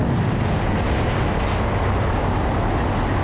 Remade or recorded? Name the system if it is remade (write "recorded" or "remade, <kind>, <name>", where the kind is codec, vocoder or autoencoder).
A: recorded